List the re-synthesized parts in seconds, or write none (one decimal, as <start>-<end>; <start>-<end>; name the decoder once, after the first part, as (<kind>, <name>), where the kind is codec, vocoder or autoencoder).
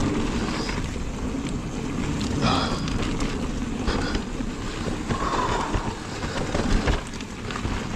none